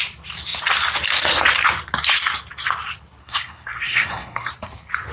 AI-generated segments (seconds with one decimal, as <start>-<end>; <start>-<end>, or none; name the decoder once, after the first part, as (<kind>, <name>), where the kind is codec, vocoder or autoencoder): 3.2-4.5 (codec, SNAC)